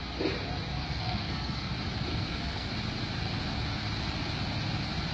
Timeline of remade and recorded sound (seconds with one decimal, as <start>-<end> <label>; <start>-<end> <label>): 0.0-0.9 recorded; 0.9-1.7 remade; 1.7-2.1 recorded; 2.1-2.7 remade; 2.7-5.1 recorded